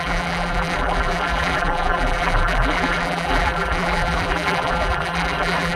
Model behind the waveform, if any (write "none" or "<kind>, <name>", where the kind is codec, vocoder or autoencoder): vocoder, BigVGAN v2